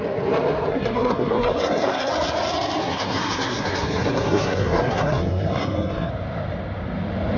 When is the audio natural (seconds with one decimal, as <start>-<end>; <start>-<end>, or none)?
0.0-0.7; 2.1-2.8; 6.1-7.4